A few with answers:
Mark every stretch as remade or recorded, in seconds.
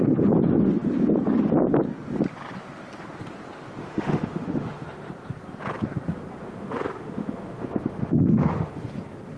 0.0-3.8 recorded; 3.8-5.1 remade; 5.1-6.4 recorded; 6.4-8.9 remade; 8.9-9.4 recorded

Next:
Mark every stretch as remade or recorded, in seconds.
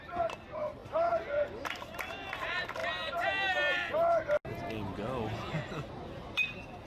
0.0-6.9 recorded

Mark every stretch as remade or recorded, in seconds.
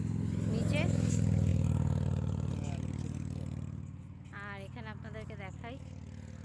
0.0-6.4 recorded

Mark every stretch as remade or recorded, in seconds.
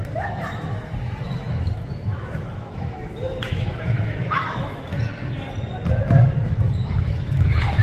0.0-4.9 remade; 4.9-5.9 recorded; 5.9-7.8 remade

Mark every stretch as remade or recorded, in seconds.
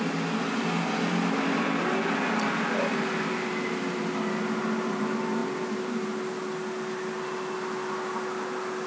0.0-8.9 recorded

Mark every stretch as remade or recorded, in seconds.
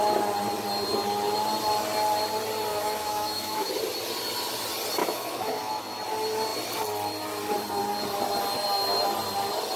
0.0-2.7 recorded; 2.7-3.7 remade; 3.7-5.0 recorded; 5.0-5.8 remade; 5.8-9.8 recorded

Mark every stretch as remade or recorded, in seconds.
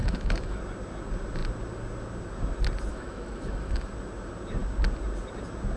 0.0-0.6 remade; 0.6-2.9 recorded; 2.9-3.9 remade; 3.9-5.8 recorded